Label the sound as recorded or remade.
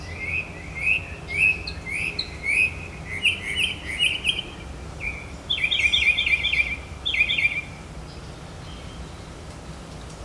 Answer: recorded